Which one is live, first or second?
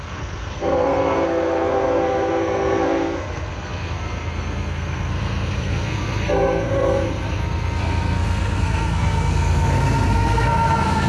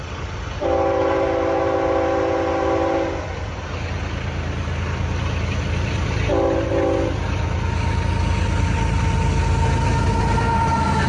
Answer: second